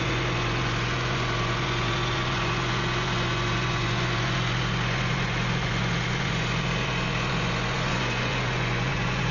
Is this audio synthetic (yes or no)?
yes